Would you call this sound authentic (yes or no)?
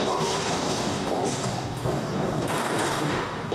no